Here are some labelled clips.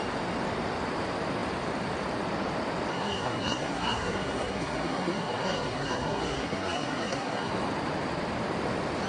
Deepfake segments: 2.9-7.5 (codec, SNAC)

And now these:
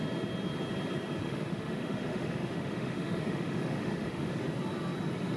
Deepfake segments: 1.2-4.4 (autoencoder, DAC-VAE)

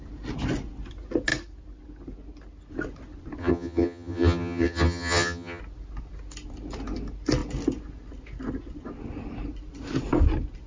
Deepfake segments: 3.4-5.6 (vocoder, HiFi-GAN)